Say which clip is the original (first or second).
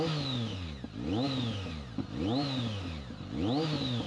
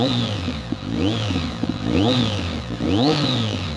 first